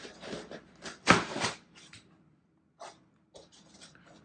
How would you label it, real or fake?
real